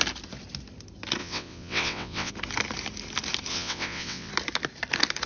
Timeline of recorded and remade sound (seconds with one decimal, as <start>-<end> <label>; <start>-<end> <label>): 0.0-1.2 recorded; 1.2-2.3 remade; 2.3-3.5 recorded; 3.5-4.3 remade; 4.3-5.3 recorded